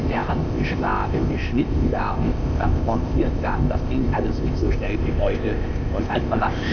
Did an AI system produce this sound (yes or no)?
yes